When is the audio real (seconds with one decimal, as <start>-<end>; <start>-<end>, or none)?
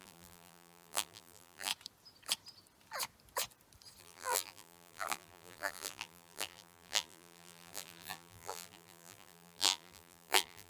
1.7-4.0